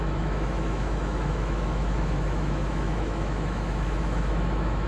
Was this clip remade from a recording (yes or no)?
yes